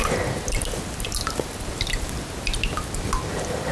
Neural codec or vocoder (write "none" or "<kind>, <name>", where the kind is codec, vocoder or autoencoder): none